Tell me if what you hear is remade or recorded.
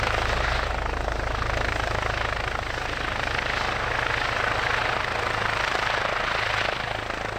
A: recorded